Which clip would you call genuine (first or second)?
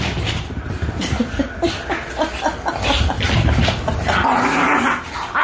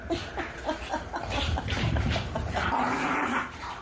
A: first